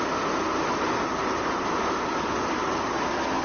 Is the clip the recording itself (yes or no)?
yes